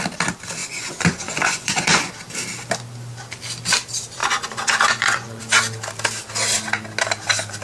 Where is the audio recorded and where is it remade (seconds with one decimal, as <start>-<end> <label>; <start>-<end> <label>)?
0.0-0.6 recorded; 0.6-2.1 remade; 2.1-4.2 recorded; 4.2-5.4 remade; 5.4-7.6 recorded